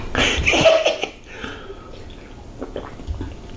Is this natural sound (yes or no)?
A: yes